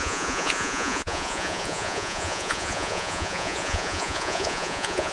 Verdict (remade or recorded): remade